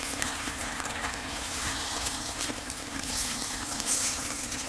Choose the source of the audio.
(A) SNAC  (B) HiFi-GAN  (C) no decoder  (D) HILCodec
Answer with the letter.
A